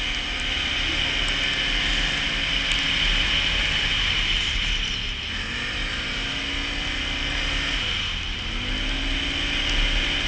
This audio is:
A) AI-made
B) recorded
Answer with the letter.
B